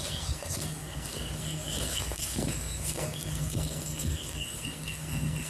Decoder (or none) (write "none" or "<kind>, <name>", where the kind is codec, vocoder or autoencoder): codec, SNAC